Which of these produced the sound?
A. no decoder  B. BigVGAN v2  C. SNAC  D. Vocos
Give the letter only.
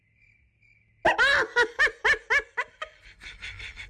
A